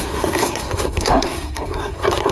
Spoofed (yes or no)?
yes